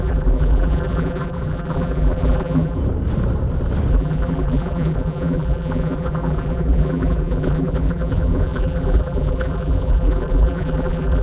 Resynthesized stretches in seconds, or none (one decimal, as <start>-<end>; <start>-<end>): 0.0-2.8; 3.9-11.2